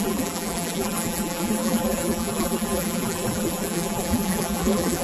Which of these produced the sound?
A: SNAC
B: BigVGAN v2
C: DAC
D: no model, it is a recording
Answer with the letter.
B